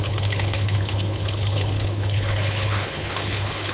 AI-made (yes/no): yes